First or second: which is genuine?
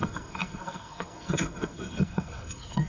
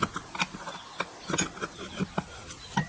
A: second